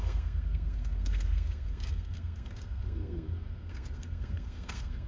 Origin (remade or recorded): remade